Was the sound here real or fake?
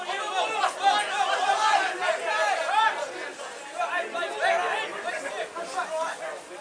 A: real